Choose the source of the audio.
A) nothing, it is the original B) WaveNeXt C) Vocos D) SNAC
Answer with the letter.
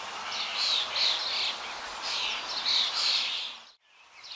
A